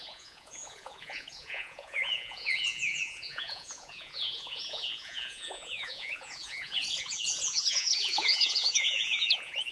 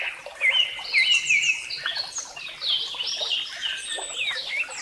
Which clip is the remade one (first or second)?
first